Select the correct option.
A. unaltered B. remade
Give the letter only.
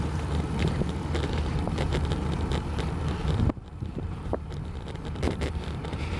B